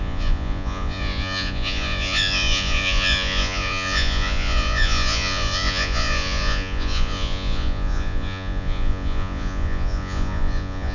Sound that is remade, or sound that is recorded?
remade